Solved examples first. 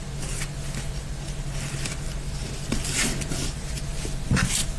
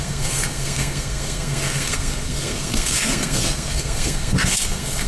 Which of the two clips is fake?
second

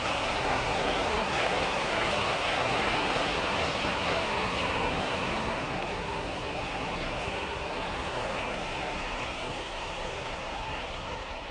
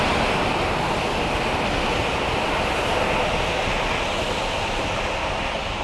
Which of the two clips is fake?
first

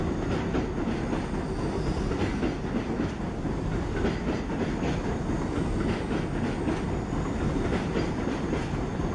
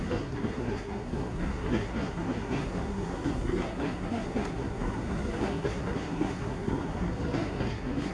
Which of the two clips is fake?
second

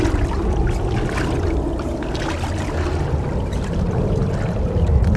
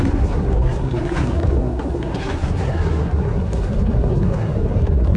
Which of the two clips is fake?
second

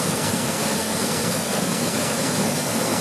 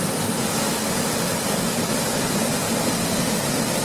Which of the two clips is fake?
first